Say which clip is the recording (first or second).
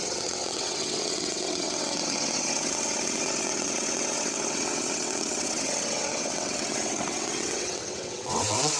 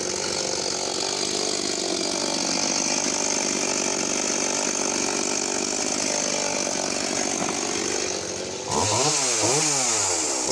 second